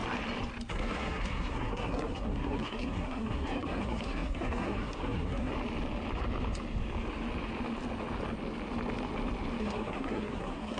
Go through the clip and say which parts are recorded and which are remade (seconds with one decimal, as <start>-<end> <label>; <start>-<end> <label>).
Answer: 0.0-0.7 recorded; 0.7-5.5 remade; 5.5-9.6 recorded; 9.6-10.8 remade